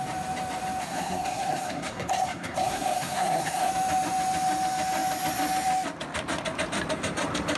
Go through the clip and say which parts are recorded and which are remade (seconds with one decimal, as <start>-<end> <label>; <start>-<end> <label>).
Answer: 0.0-0.8 recorded; 0.8-3.7 remade; 3.7-7.6 recorded